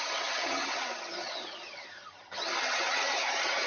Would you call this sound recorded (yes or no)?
no